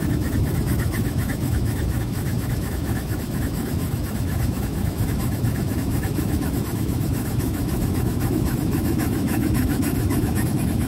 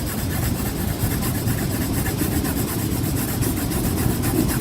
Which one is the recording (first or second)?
second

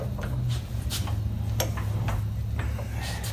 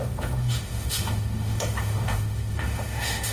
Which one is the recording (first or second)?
first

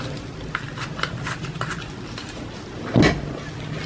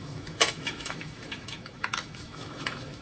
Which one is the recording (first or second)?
first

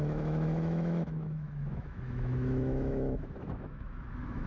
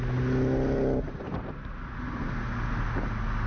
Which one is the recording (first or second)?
second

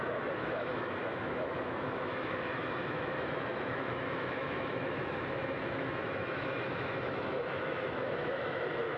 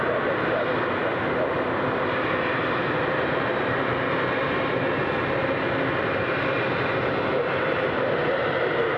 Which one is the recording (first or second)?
second